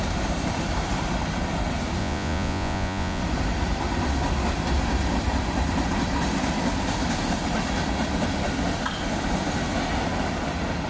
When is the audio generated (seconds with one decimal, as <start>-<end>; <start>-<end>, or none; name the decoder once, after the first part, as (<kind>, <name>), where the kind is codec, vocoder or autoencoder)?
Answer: 2.0-3.2 (vocoder, Vocos)

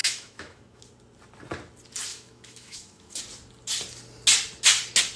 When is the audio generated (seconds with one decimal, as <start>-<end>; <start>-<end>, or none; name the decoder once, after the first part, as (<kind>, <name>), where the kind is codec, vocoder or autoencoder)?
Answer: 0.0-0.8 (autoencoder, DAC-VAE); 2.1-3.2